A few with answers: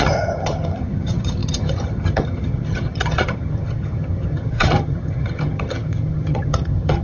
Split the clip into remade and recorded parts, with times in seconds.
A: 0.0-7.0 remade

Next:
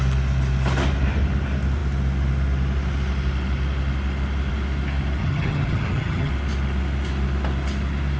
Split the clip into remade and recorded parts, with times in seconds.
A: 0.0-5.2 recorded; 5.2-6.3 remade; 6.3-8.2 recorded

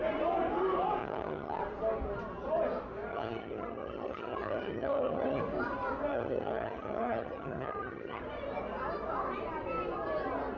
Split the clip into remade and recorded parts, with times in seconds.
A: 0.0-1.0 recorded; 1.0-1.6 remade; 1.6-3.1 recorded; 3.1-5.4 remade; 5.4-6.1 recorded; 6.1-8.2 remade; 8.2-10.6 recorded

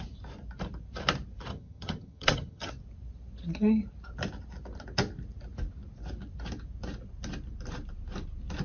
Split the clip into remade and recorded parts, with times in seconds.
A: 0.0-1.5 recorded; 1.5-2.7 remade; 2.7-8.6 recorded

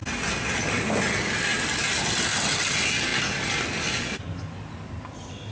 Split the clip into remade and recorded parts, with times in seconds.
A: 0.0-5.5 recorded

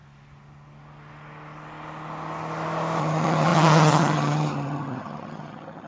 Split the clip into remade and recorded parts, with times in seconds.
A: 0.0-3.0 recorded; 3.0-5.9 remade